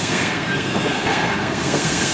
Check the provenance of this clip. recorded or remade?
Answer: remade